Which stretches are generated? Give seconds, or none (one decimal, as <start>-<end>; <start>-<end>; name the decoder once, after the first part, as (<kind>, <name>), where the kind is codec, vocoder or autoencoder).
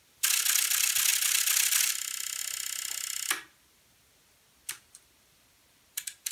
none